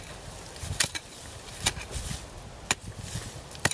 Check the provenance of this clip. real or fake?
real